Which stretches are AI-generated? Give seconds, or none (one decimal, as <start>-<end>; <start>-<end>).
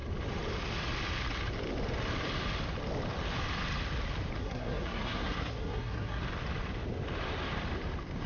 4.4-6.2